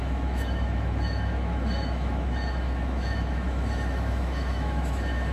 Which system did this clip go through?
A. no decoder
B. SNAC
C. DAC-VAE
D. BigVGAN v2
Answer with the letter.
C